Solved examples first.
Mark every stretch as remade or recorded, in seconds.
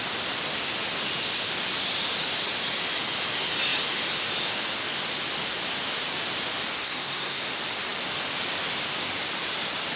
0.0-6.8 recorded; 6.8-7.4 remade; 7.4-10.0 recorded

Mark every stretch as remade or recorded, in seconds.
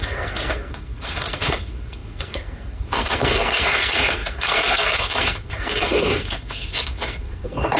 0.0-7.8 remade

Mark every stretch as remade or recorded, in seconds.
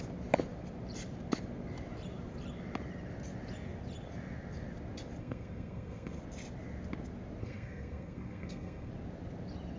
0.0-5.2 recorded; 5.2-6.2 remade; 6.2-7.4 recorded; 7.4-8.9 remade; 8.9-9.8 recorded